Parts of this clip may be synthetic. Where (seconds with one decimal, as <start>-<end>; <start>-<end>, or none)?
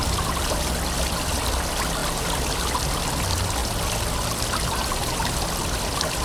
none